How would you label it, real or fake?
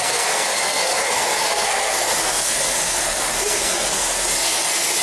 fake